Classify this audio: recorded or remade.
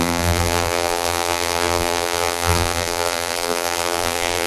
remade